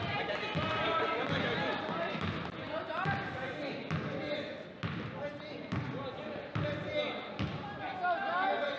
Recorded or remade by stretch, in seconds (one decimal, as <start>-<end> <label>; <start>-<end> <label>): 0.0-8.8 recorded